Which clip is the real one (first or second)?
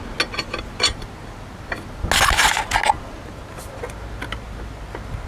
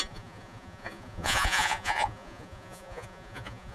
first